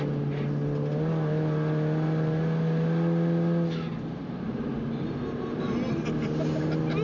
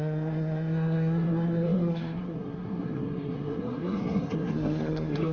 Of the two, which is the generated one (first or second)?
second